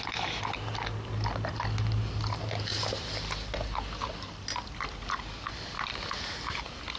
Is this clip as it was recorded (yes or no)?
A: yes